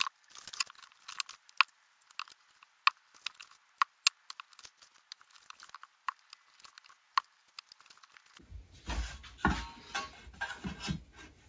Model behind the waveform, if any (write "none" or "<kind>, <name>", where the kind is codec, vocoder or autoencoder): none